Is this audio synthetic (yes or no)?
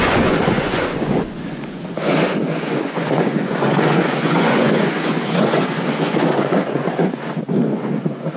yes